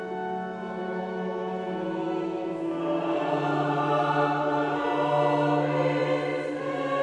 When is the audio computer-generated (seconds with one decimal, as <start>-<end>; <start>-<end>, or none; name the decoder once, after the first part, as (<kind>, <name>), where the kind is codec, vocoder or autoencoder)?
0.8-2.8 (autoencoder, DAC-VAE)